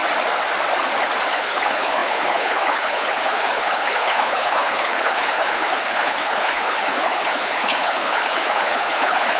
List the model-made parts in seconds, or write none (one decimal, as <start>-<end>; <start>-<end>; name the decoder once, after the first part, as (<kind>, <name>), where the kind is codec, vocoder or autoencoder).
1.3-9.4 (codec, HILCodec)